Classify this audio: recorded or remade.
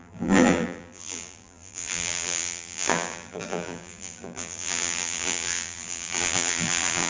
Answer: remade